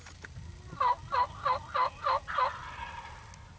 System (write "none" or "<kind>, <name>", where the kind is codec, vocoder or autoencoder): none